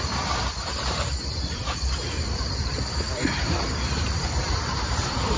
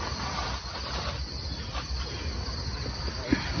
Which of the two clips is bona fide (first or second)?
second